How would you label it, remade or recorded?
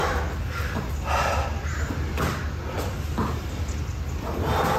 recorded